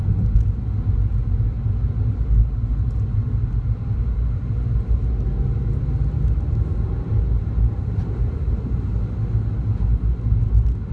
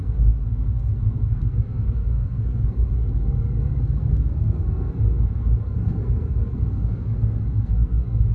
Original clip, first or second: first